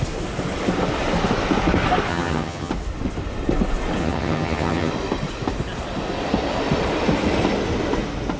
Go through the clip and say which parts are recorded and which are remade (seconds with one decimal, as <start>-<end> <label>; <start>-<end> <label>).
0.0-2.1 recorded; 2.1-2.7 remade; 2.7-4.0 recorded; 4.0-4.9 remade; 4.9-8.4 recorded